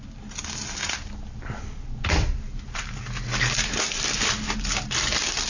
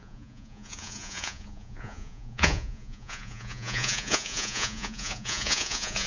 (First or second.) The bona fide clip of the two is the first